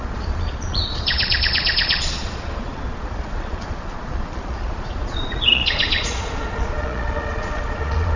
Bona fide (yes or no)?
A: no